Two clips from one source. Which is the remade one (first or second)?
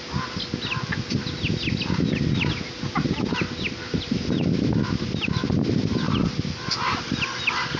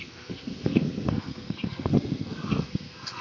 second